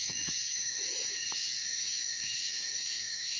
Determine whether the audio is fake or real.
fake